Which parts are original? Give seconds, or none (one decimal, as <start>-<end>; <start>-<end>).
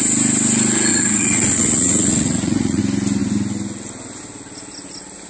0.0-0.9; 2.8-5.3